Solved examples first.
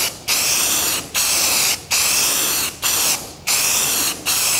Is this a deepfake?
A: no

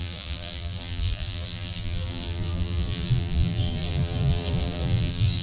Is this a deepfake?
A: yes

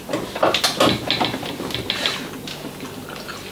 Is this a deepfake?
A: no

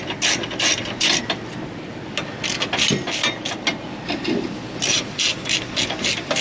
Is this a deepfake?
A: no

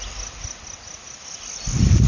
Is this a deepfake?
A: yes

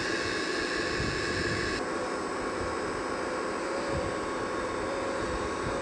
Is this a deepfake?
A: no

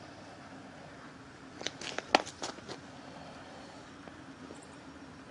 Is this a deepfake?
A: no